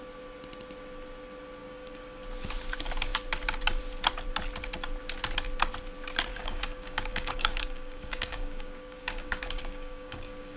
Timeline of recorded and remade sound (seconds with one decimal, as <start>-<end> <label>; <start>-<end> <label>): 0.0-1.6 recorded; 1.6-2.2 remade; 2.2-6.3 recorded; 6.3-10.6 remade